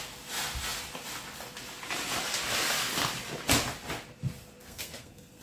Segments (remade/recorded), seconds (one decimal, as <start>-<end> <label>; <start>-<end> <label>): 0.0-4.6 recorded; 4.6-5.4 remade